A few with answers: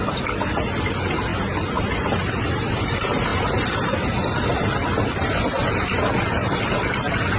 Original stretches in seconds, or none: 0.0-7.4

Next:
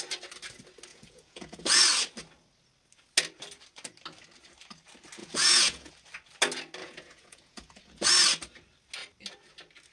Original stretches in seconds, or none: 0.0-0.9; 1.8-5.2; 5.9-6.8; 8.1-9.9

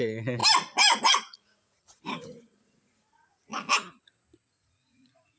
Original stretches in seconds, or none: 0.4-1.0; 3.5-4.5

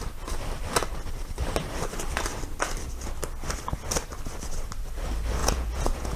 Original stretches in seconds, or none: 0.0-5.4